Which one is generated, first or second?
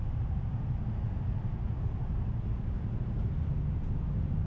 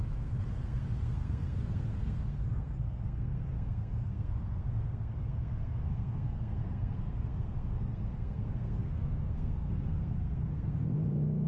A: second